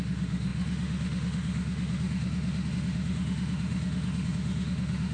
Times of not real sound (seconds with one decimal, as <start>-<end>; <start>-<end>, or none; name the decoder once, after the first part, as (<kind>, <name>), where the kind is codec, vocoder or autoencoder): 0.0-5.1 (autoencoder, DAC-VAE)